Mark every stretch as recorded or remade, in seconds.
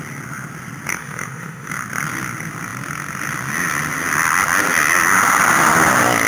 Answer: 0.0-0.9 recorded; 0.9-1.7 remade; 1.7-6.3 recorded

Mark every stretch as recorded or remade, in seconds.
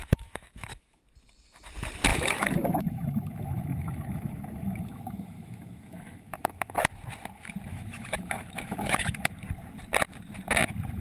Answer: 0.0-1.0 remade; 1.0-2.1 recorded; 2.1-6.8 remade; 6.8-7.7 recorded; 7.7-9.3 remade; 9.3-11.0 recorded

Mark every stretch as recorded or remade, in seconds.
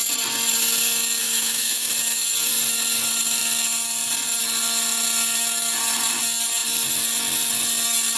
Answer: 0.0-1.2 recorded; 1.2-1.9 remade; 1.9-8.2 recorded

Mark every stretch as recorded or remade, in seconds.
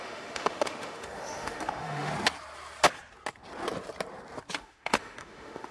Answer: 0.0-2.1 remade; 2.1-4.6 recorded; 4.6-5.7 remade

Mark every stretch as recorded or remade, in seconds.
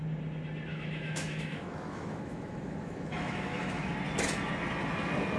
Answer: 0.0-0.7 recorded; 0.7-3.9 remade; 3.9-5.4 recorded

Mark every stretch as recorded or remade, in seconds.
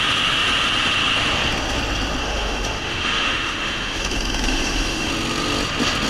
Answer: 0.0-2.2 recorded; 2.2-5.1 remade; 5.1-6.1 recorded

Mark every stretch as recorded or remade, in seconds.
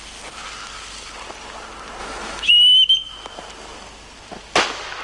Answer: 0.0-2.0 recorded; 2.0-2.5 remade; 2.5-5.0 recorded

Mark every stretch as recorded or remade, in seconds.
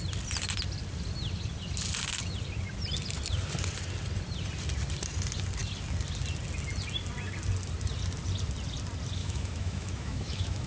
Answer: 0.0-9.2 recorded; 9.2-10.7 remade